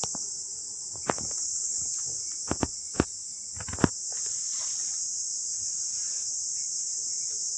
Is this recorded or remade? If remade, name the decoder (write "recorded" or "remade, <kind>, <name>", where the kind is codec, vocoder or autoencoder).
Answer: remade, vocoder, BigVGAN v2